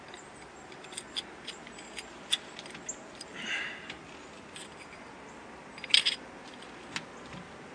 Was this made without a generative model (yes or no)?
yes